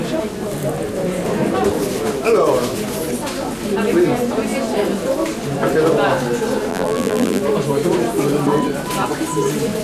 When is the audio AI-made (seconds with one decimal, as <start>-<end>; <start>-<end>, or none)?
6.7-7.4